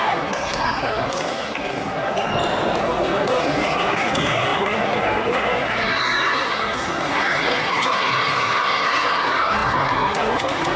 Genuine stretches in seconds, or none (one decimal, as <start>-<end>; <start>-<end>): 2.3-2.8